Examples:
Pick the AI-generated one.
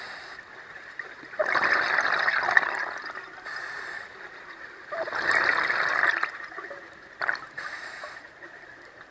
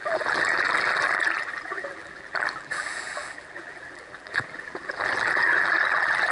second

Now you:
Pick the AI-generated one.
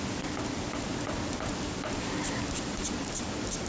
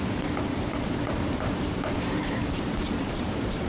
second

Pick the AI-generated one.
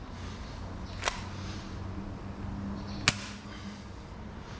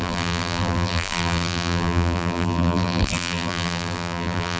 second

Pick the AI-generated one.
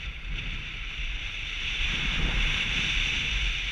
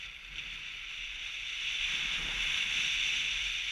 first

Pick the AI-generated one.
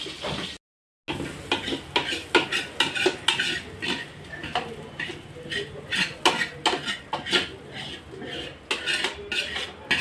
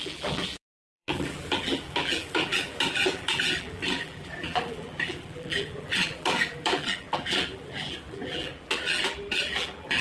second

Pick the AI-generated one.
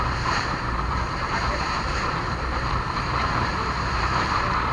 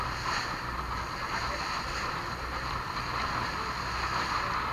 first